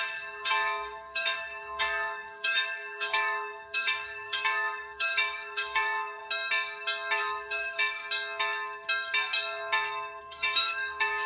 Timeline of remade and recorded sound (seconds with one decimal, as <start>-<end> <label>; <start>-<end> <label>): 0.0-6.2 remade; 6.2-7.2 recorded; 7.2-8.0 remade; 8.0-10.2 recorded; 10.2-11.3 remade

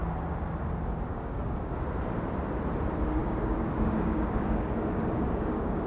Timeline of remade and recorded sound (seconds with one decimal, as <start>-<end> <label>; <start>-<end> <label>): 0.0-1.1 recorded; 1.1-1.7 remade; 1.7-3.2 recorded; 3.2-5.9 remade

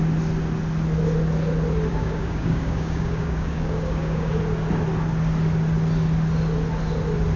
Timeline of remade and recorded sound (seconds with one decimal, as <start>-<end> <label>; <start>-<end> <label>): 0.0-1.9 recorded; 1.9-4.3 remade; 4.3-7.4 recorded

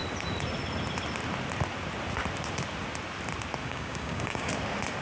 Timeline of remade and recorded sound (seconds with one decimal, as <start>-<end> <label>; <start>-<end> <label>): 0.0-3.6 recorded; 3.6-4.5 remade; 4.5-5.0 recorded

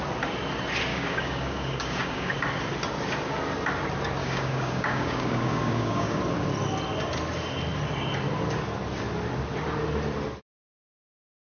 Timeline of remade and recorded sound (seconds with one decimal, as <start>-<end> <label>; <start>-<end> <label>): 0.0-0.9 recorded; 0.9-2.3 remade; 2.3-4.2 recorded; 4.2-6.2 remade; 6.2-11.4 recorded